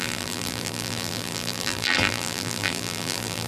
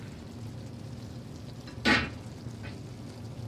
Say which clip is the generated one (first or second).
first